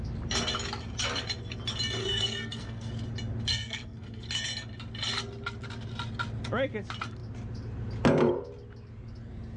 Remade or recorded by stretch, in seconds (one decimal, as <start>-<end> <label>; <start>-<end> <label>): 0.0-2.0 recorded; 2.0-2.9 remade; 2.9-3.5 recorded; 3.5-4.3 remade; 4.3-9.6 recorded